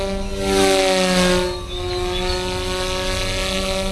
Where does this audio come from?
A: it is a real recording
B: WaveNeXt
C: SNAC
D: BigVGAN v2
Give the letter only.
A